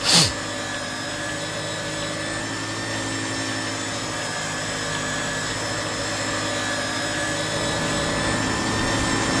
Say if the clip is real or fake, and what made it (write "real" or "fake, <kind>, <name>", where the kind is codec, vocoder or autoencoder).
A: real